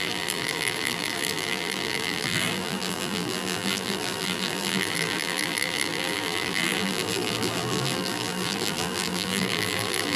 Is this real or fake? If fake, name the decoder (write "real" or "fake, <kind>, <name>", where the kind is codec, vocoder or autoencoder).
fake, vocoder, BigVGAN v2